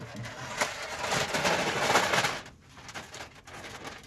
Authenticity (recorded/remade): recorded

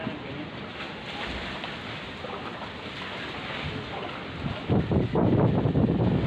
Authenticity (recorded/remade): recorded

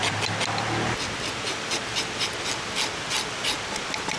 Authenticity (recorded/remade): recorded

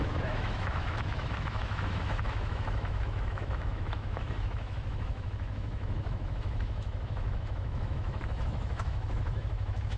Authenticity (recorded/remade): remade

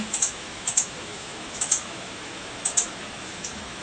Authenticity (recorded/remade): remade